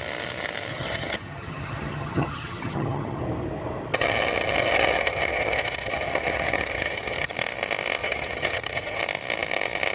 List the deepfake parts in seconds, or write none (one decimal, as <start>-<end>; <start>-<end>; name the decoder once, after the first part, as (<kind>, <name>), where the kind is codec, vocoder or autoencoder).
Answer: 0.7-3.2 (vocoder, HiFi-GAN); 3.9-7.3; 8.0-9.0